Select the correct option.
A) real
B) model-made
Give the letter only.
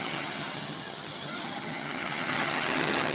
B